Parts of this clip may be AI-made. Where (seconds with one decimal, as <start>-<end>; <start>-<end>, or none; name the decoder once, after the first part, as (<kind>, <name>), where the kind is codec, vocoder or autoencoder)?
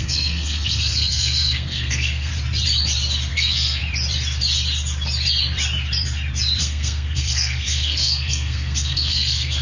0.0-2.3 (codec, SNAC); 3.3-3.8; 6.6-9.6